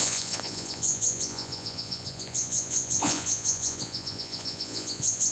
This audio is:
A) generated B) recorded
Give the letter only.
A